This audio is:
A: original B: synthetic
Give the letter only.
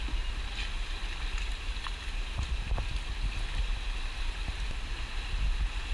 A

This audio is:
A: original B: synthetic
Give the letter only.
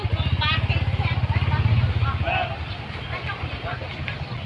A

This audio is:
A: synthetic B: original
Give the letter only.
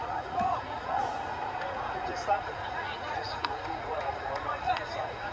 A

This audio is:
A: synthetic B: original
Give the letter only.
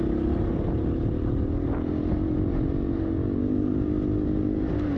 B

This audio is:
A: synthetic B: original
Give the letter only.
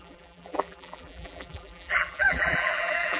A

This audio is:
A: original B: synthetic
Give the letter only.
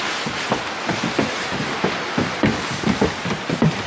A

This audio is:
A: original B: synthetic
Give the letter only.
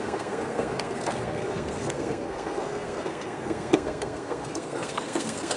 B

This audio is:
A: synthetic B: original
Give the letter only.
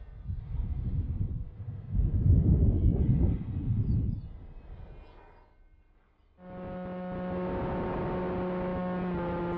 B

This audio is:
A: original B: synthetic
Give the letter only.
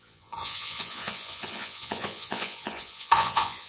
B